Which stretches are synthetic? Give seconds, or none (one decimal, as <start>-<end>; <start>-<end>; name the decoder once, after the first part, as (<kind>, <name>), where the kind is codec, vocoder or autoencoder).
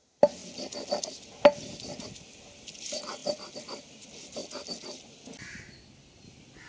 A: none